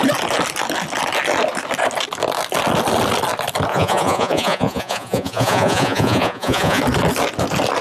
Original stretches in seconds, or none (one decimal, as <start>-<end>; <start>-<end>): 0.0-3.7; 6.8-7.8